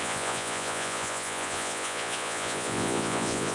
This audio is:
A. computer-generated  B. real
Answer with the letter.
A